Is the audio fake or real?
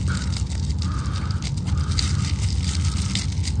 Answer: real